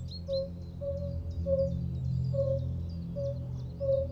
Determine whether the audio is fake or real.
real